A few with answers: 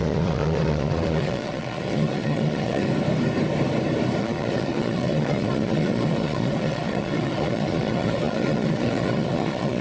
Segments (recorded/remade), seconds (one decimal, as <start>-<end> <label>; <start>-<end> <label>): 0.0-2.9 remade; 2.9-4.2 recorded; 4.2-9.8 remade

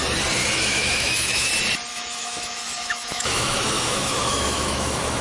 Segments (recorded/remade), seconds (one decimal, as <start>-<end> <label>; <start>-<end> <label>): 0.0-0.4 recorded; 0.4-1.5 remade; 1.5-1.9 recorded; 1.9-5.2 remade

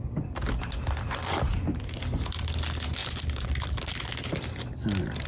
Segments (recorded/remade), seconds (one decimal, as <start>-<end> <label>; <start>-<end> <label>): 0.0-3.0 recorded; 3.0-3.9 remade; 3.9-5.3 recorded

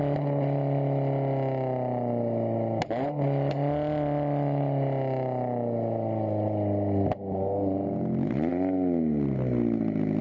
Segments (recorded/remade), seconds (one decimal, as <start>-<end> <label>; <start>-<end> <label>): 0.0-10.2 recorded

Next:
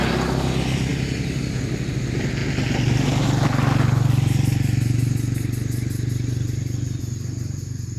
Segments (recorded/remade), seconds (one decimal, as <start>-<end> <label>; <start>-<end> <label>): 0.0-0.9 recorded; 0.9-1.4 remade; 1.4-8.0 recorded